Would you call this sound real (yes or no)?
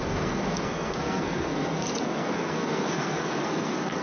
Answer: no